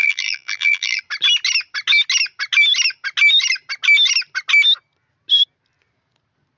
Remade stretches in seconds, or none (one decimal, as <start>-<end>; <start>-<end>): 0.0-1.0

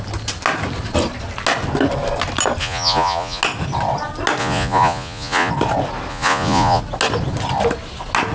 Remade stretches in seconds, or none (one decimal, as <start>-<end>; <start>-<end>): 2.6-3.4; 4.4-5.5; 6.1-6.8

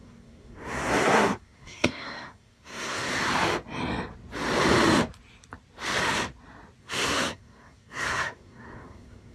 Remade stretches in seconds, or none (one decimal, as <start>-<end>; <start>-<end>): 0.0-3.1; 6.8-9.3

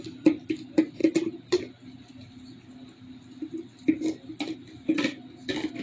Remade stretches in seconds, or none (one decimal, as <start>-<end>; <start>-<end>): none

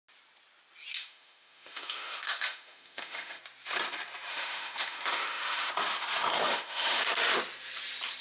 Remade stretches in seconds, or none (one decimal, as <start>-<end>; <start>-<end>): 1.0-3.4; 4.3-5.7; 6.3-7.0

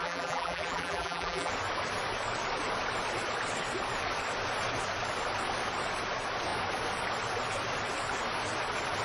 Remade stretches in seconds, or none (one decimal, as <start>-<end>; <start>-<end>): 0.0-1.5

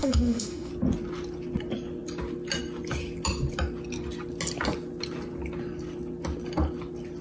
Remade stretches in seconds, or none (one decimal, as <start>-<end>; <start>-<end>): 0.0-0.7

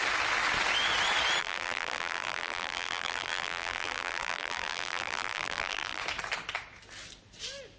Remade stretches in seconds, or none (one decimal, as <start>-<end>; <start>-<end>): 1.4-6.0